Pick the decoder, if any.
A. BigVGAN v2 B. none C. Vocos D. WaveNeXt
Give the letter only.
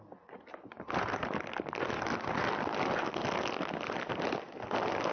B